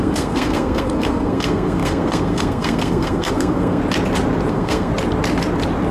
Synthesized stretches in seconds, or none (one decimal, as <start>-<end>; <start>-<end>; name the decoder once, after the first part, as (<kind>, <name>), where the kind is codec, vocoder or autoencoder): 0.0-3.8 (codec, SNAC); 4.5-4.9